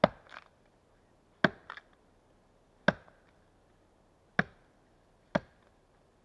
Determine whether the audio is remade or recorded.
recorded